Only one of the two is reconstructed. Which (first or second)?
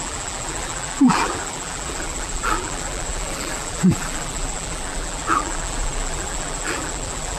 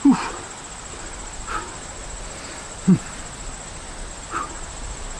first